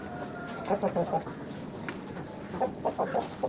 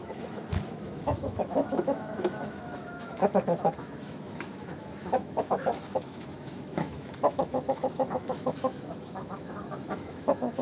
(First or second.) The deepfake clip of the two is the second